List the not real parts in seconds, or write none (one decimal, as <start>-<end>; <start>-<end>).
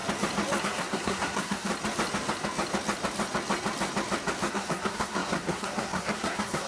0.6-1.7; 4.5-6.7